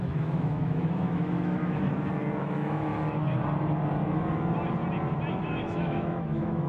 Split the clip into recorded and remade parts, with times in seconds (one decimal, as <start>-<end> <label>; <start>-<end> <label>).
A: 0.0-1.9 remade; 1.9-2.4 recorded; 2.4-2.9 remade; 2.9-5.3 recorded; 5.3-6.7 remade